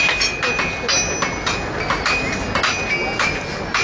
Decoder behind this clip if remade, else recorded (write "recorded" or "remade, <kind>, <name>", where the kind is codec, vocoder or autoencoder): recorded